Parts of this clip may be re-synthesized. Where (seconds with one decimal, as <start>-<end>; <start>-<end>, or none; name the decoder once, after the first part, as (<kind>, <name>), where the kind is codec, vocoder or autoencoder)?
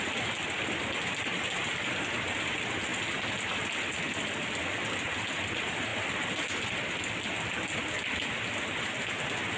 none